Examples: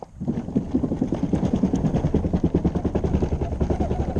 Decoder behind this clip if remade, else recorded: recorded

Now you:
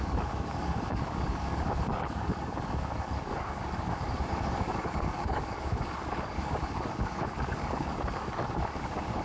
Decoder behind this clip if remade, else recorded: remade, codec, DAC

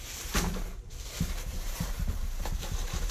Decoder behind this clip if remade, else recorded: remade, vocoder, BigVGAN v2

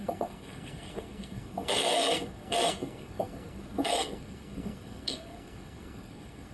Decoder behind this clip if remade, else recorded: remade, codec, SNAC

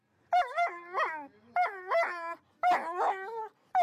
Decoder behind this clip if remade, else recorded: recorded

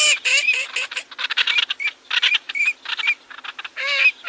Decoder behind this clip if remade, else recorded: recorded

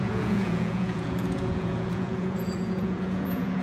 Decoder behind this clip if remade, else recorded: remade, vocoder, Vocos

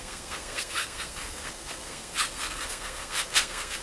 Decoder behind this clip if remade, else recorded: remade, codec, SNAC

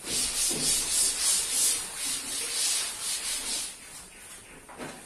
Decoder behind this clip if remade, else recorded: recorded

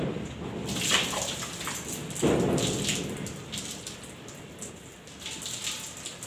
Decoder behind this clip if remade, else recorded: recorded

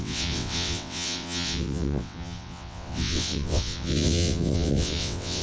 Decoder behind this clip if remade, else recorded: remade, vocoder, WaveNeXt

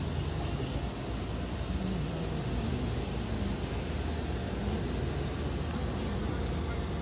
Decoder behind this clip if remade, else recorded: recorded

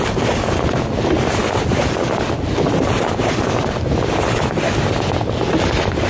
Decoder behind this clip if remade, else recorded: recorded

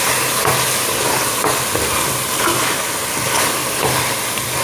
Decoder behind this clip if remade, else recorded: recorded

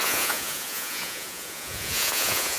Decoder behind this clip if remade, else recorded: remade, vocoder, Vocos